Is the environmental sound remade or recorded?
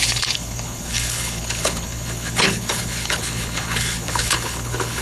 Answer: remade